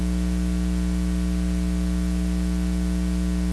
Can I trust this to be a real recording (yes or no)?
yes